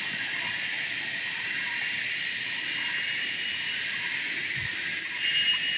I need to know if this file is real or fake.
real